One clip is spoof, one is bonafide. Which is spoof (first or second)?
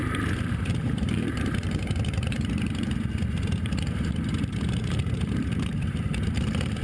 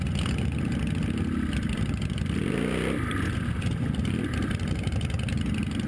first